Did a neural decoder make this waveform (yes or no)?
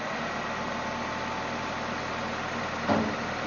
no